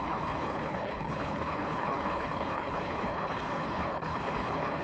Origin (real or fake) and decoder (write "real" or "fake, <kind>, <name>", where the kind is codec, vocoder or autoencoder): fake, codec, HILCodec